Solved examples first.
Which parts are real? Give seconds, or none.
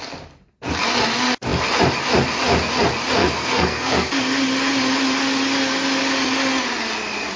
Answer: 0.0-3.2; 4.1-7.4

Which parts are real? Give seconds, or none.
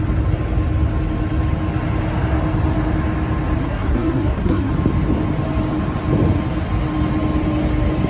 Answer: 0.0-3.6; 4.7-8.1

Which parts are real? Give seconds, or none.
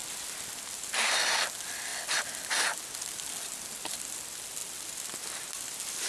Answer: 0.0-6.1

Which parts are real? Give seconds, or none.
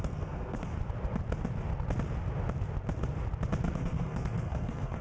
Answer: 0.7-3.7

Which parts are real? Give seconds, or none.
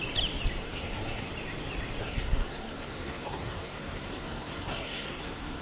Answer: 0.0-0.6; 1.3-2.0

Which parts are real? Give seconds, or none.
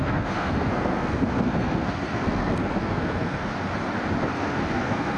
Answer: 3.5-4.3